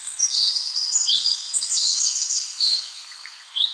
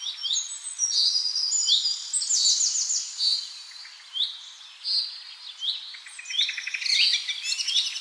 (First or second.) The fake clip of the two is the first